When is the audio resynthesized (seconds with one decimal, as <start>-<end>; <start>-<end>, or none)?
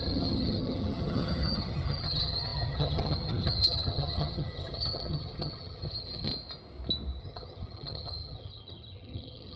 0.0-6.3; 7.2-9.6